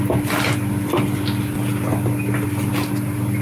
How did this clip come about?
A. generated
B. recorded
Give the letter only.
B